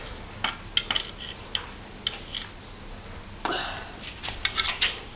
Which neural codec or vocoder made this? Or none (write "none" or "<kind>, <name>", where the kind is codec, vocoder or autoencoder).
none